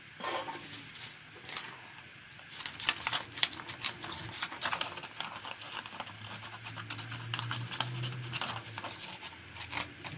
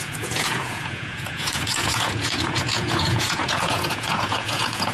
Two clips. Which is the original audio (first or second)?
first